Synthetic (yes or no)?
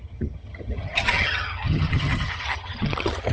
yes